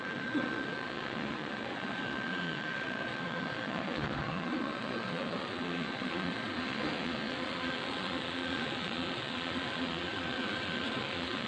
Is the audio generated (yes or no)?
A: yes